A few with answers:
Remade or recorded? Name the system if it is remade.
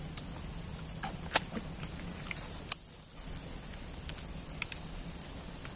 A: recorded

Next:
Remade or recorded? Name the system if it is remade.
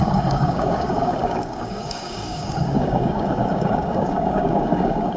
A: remade, codec, DAC